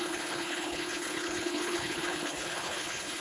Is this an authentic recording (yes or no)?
no